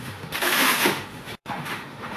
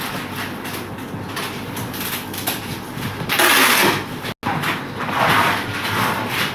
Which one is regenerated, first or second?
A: first